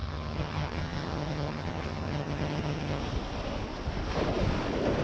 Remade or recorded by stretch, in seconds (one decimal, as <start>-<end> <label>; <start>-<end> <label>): 0.0-3.0 remade; 3.0-5.0 recorded